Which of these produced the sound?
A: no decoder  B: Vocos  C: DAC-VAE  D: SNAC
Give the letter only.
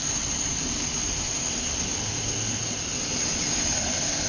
A